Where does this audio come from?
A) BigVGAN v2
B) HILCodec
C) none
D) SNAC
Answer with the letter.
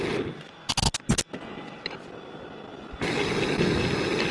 C